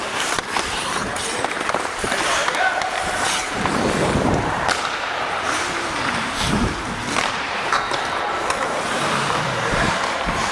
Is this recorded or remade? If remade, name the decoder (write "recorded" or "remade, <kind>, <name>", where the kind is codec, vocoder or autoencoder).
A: remade, vocoder, BigVGAN v2